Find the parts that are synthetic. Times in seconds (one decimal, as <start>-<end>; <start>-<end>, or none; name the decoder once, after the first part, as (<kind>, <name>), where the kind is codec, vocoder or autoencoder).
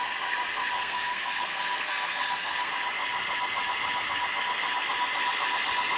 0.8-2.7 (codec, SNAC)